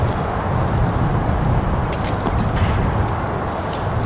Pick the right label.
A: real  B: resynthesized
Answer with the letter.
A